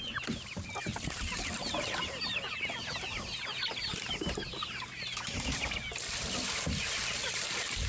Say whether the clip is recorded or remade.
recorded